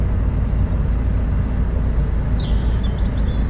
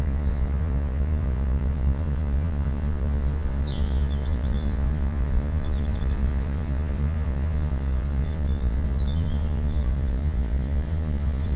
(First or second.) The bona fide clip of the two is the first